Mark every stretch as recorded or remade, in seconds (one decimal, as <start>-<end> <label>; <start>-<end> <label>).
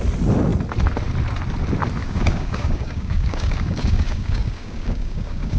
0.0-2.0 recorded; 2.0-5.6 remade